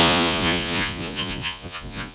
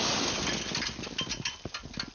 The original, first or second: second